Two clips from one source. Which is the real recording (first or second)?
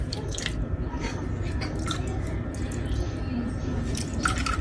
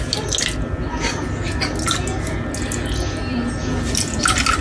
second